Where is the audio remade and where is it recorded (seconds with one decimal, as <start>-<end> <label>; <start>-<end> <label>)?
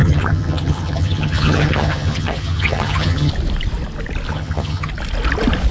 0.0-3.3 remade; 3.3-4.3 recorded; 4.3-4.9 remade; 4.9-5.7 recorded